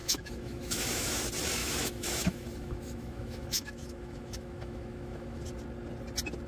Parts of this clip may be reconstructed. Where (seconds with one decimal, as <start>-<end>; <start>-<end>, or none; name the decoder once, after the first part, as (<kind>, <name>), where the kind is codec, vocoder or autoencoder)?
0.0-1.2 (autoencoder, DAC-VAE); 1.6-5.4